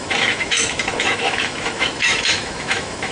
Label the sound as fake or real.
fake